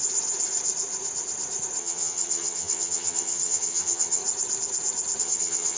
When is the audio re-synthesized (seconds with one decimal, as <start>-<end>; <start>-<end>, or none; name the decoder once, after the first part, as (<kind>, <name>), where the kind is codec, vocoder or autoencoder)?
1.8-4.2 (vocoder, HiFi-GAN); 5.2-5.8